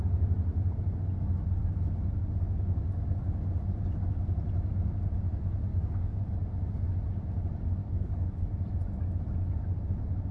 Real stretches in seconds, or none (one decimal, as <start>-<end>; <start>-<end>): 0.0-2.2; 3.2-5.7; 6.2-7.8; 8.5-10.3